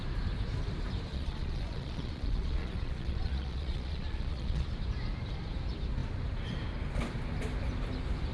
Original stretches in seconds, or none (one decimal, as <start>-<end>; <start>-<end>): 0.0-1.1; 4.7-8.3